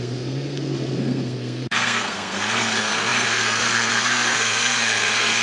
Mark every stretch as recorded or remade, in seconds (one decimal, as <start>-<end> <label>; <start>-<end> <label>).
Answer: 0.0-5.4 remade

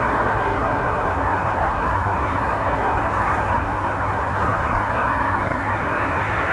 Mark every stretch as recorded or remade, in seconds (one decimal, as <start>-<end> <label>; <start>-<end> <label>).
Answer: 0.0-6.5 remade

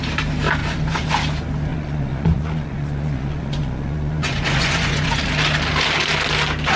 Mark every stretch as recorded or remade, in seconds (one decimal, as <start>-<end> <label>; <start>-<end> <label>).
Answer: 0.0-0.6 recorded; 0.6-1.1 remade; 1.1-1.7 recorded; 1.7-5.2 remade; 5.2-6.8 recorded

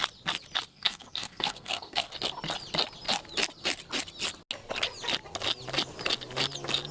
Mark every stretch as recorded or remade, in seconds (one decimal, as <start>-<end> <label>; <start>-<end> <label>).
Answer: 0.0-0.7 recorded; 0.7-2.1 remade; 2.1-6.9 recorded

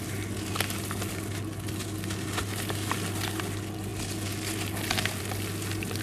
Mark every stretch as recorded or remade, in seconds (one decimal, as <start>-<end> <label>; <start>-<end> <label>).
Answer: 0.0-6.0 recorded

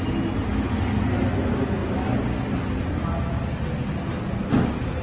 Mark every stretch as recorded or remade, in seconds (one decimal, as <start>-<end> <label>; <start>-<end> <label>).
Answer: 0.0-5.0 recorded

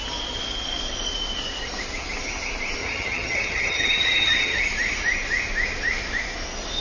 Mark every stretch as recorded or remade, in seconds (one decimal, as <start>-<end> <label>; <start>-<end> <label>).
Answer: 0.0-2.8 recorded; 2.8-4.6 remade; 4.6-6.8 recorded